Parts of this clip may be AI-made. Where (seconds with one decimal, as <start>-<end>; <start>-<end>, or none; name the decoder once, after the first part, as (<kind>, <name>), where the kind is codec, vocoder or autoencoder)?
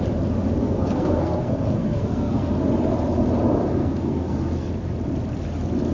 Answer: 0.6-2.5 (codec, SNAC); 3.8-4.7